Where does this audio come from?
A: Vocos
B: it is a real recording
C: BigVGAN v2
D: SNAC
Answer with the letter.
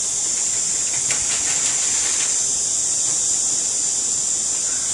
B